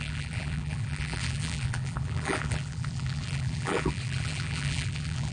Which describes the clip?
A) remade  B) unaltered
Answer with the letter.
A